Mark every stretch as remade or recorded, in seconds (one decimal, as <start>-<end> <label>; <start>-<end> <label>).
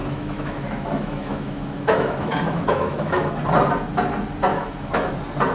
0.0-3.3 remade; 3.3-4.5 recorded; 4.5-5.1 remade; 5.1-5.5 recorded